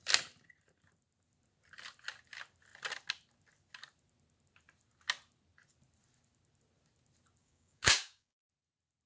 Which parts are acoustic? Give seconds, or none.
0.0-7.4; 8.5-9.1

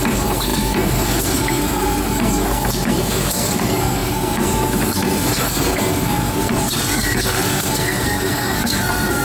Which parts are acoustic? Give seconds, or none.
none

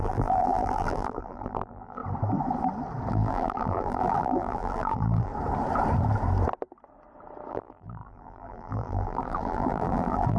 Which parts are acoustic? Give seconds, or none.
2.0-3.1; 5.3-7.5

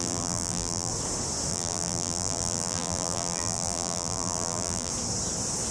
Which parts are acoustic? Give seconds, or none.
0.9-1.5; 4.9-5.7